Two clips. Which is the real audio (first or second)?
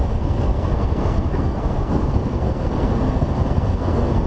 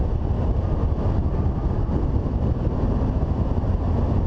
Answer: second